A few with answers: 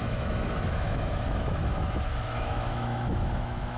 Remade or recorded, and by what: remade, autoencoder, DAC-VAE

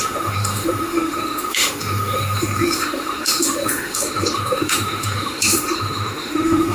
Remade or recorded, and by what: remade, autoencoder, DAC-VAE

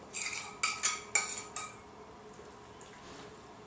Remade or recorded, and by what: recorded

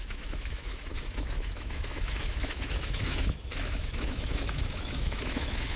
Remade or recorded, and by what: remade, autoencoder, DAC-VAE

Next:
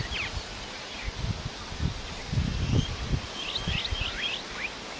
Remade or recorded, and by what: recorded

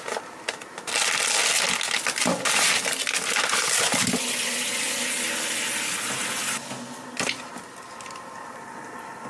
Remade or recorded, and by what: recorded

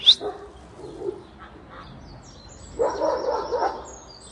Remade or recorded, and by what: recorded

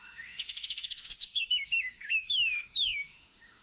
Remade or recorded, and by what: remade, autoencoder, DAC-VAE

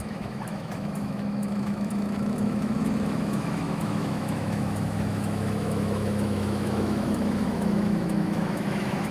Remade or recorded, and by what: remade, autoencoder, DAC-VAE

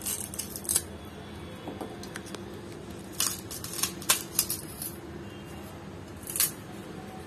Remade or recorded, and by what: recorded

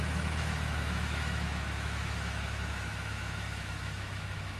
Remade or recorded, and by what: remade, autoencoder, DAC-VAE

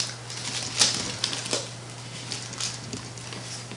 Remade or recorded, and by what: recorded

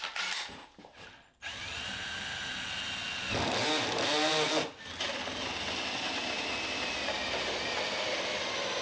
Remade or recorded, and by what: recorded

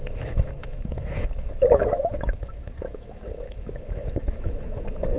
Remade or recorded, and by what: remade, autoencoder, DAC-VAE